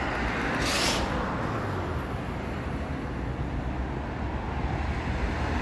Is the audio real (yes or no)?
yes